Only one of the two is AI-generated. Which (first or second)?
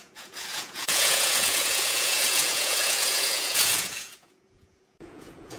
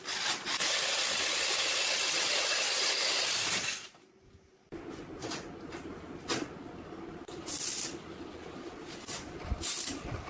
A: first